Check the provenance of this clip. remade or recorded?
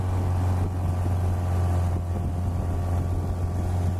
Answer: recorded